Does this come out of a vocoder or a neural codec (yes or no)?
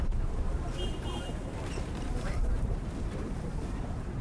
yes